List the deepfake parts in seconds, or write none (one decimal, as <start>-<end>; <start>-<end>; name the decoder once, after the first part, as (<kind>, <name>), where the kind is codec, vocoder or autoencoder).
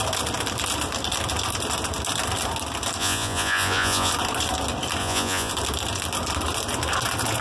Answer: 3.0-4.1 (vocoder, Vocos); 5.0-5.5